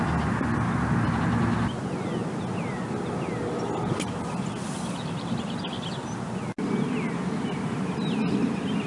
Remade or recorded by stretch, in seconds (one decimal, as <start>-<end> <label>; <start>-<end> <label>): 0.0-8.9 recorded